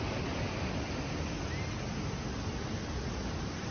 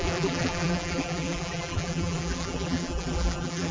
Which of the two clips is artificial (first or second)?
second